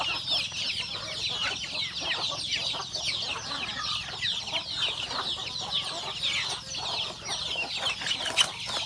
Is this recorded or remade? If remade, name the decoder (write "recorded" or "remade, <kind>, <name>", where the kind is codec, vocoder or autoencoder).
recorded